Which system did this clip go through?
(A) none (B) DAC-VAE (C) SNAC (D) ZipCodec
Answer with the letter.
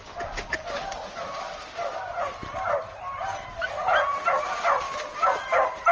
A